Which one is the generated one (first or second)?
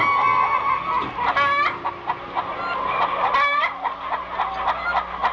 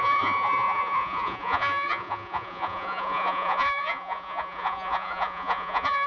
second